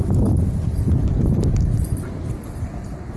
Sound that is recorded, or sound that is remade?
recorded